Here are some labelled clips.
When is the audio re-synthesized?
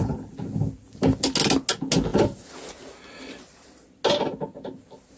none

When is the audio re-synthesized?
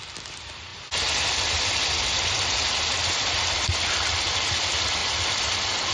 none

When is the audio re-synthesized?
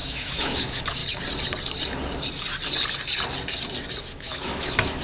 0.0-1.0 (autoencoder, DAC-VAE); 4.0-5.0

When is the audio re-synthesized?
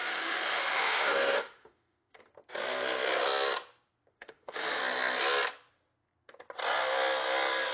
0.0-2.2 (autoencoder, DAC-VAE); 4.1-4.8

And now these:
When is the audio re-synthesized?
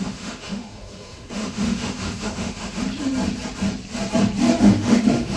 0.0-2.8 (autoencoder, DAC-VAE); 4.6-5.4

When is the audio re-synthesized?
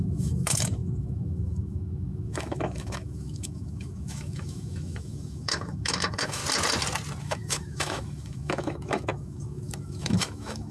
0.0-6.4 (autoencoder, DAC-VAE); 7.2-10.7